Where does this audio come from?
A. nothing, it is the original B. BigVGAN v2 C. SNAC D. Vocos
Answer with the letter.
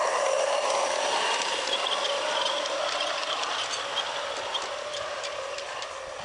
A